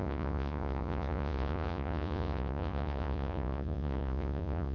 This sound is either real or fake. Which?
fake